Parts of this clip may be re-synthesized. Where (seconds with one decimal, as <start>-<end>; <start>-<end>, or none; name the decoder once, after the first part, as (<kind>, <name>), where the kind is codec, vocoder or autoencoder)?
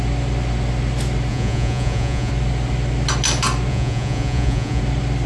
1.3-2.3 (vocoder, Vocos); 3.7-4.8